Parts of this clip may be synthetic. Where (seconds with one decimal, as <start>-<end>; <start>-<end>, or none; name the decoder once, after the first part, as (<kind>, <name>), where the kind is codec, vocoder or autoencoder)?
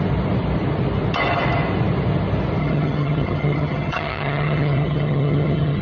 2.6-5.8 (vocoder, HiFi-GAN)